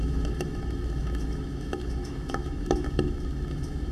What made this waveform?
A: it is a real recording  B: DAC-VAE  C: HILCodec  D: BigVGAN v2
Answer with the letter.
B